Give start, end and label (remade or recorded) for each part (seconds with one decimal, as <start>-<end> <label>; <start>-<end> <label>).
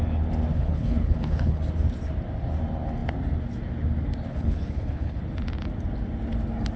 0.0-0.5 recorded; 0.5-1.6 remade; 1.6-4.3 recorded; 4.3-5.2 remade; 5.2-6.8 recorded